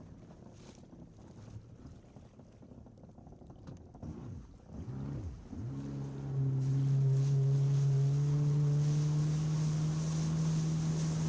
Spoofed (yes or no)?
no